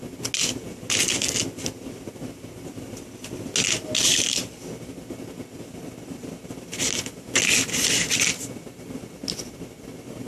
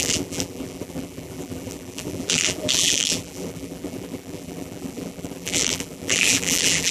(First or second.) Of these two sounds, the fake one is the second